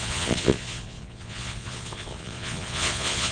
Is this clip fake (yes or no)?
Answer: yes